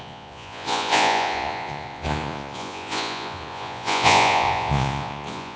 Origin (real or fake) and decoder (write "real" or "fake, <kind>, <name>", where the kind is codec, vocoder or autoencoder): fake, vocoder, Vocos